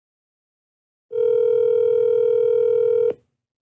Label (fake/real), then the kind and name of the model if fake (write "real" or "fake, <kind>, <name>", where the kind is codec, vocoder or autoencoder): real